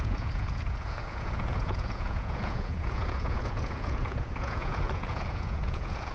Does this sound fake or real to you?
fake